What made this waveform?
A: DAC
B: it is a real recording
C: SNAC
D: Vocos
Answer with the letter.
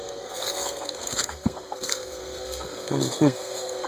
C